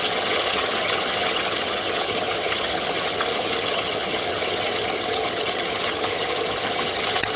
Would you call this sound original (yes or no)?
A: no